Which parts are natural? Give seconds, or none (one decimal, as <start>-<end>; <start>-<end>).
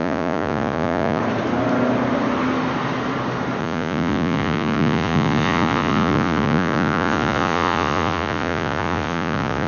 1.2-3.6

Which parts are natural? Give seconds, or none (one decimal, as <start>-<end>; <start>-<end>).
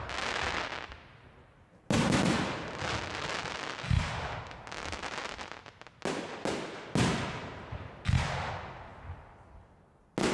0.0-10.3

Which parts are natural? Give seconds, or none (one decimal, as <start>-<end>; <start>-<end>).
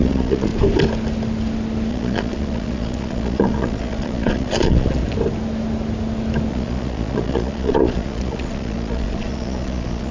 0.5-1.9; 5.0-6.5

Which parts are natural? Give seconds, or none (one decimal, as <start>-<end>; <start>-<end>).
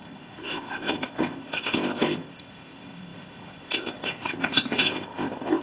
none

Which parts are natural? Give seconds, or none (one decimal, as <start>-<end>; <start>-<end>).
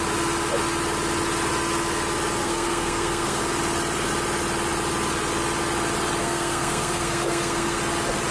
0.0-2.4; 3.4-6.2; 7.8-8.3